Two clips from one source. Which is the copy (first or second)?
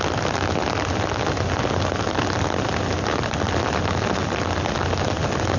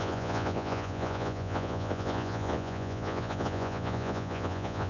second